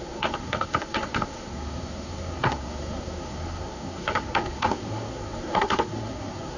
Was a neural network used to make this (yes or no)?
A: yes